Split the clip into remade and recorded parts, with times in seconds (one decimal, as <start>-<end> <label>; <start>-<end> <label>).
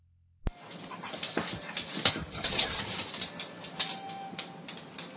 0.0-2.2 recorded; 2.2-2.8 remade; 2.8-5.2 recorded